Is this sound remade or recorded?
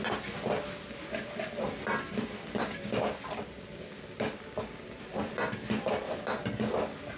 recorded